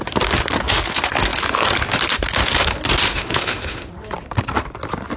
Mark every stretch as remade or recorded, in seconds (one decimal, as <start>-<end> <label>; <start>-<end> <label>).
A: 0.0-3.1 recorded; 3.1-3.9 remade; 3.9-5.2 recorded